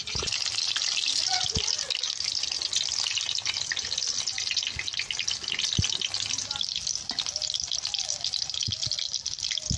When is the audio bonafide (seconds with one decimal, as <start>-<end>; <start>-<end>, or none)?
0.0-9.8